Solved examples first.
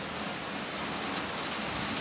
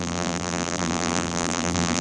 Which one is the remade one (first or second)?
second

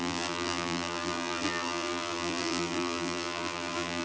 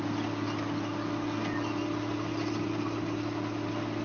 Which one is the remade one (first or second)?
first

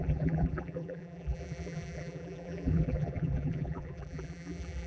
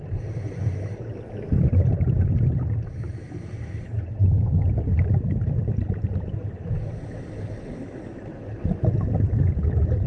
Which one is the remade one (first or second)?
first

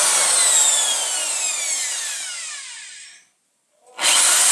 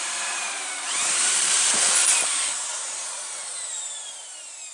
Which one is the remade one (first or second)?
second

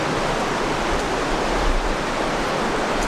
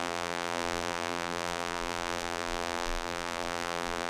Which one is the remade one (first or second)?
second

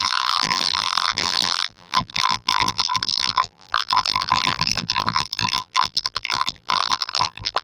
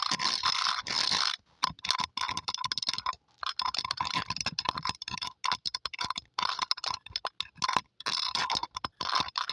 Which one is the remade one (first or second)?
first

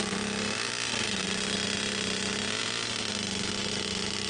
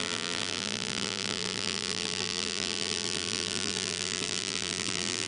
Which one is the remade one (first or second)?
second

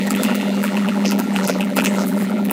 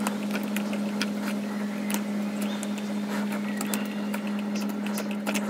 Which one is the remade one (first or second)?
first